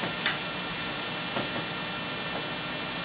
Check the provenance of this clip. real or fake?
real